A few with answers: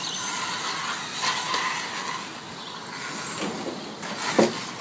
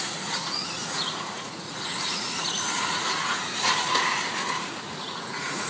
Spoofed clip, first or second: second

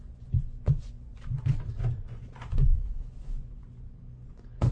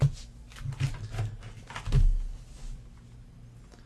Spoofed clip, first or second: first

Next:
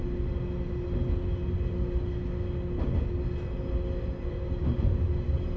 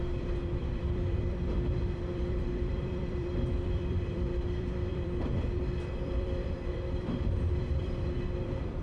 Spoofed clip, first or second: second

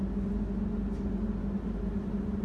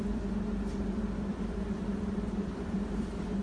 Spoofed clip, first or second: second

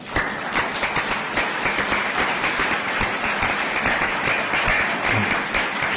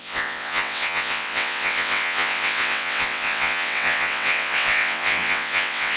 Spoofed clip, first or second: second